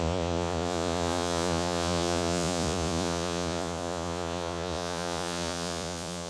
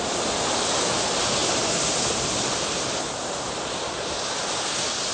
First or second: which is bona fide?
second